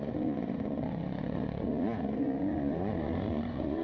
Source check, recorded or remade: remade